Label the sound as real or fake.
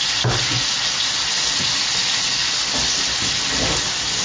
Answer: real